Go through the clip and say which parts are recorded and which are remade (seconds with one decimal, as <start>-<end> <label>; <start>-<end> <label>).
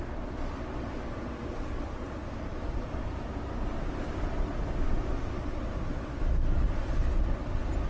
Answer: 0.0-7.9 recorded